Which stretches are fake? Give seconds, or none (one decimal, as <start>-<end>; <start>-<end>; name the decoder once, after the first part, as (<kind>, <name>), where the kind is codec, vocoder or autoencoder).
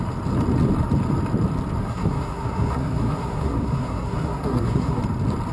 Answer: 1.8-5.0 (codec, SNAC)